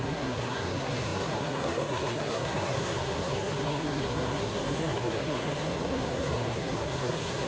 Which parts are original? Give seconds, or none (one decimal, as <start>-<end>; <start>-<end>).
none